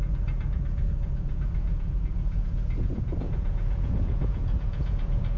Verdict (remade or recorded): remade